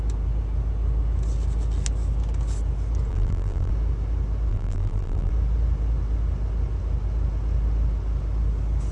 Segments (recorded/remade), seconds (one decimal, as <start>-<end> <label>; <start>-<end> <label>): 0.0-3.1 recorded; 3.1-3.7 remade; 3.7-4.5 recorded; 4.5-5.3 remade; 5.3-8.9 recorded